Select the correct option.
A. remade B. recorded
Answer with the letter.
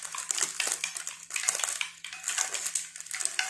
B